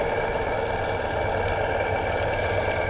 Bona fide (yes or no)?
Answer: yes